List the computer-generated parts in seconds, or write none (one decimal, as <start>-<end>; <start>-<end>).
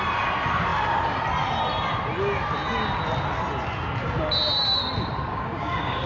5.3-6.1